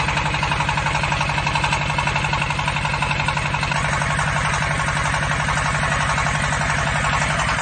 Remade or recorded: recorded